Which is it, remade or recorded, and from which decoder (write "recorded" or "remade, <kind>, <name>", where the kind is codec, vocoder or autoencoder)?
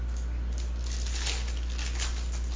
recorded